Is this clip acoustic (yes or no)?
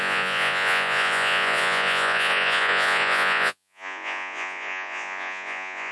no